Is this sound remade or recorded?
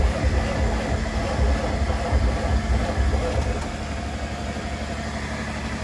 recorded